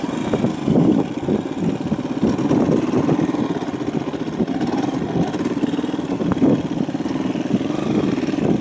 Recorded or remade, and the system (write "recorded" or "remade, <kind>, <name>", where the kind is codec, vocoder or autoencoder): recorded